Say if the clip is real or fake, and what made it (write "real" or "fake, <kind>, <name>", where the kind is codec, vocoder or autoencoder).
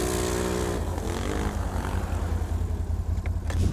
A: real